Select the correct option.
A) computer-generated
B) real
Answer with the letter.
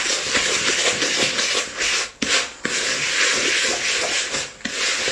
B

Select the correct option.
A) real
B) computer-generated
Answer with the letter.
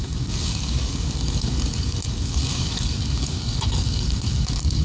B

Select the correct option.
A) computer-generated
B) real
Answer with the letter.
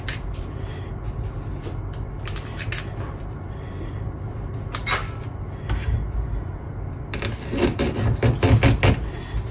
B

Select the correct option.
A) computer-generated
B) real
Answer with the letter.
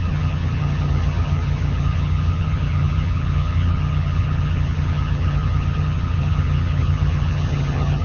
A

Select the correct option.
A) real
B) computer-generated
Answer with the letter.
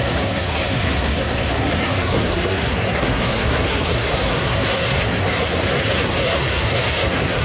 B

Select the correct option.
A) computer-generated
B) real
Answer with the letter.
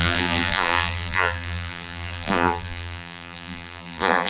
A